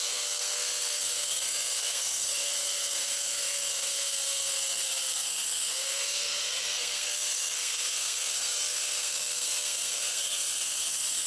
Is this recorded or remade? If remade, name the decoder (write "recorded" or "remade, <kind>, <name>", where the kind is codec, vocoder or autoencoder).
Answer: remade, codec, SNAC